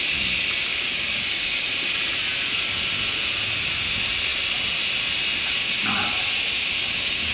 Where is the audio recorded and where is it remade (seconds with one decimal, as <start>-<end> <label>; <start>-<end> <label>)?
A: 0.0-0.7 recorded; 0.7-1.7 remade; 1.7-6.8 recorded; 6.8-7.3 remade